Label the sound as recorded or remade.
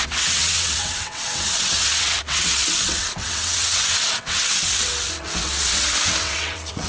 remade